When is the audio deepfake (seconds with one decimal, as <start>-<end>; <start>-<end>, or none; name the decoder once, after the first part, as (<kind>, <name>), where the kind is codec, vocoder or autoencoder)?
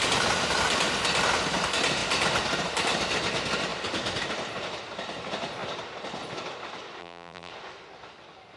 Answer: 7.0-7.5 (vocoder, BigVGAN v2)